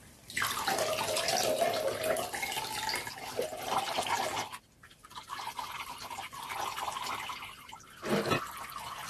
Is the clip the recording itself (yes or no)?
yes